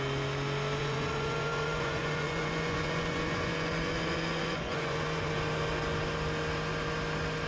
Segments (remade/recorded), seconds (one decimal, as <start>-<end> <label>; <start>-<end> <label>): 0.0-0.8 recorded; 0.8-5.3 remade; 5.3-7.5 recorded